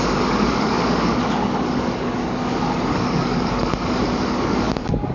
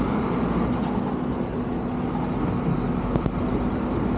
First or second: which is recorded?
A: second